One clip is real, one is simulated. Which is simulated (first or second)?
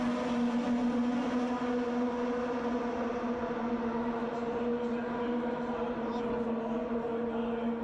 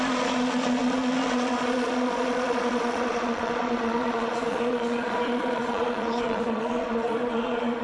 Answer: second